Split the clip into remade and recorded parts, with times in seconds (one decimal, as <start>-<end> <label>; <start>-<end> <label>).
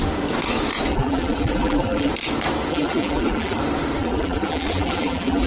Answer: 0.0-0.9 recorded; 0.9-2.1 remade; 2.1-2.7 recorded; 2.7-3.6 remade; 3.6-4.0 recorded; 4.0-5.5 remade